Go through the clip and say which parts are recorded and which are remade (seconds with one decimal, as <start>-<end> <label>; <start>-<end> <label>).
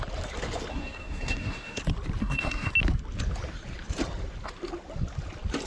0.0-0.7 recorded; 0.7-1.8 remade; 1.8-2.2 recorded; 2.2-2.7 remade; 2.7-5.7 recorded